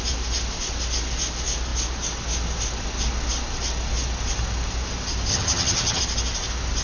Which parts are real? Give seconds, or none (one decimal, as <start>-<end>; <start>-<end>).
0.0-5.3; 6.0-6.8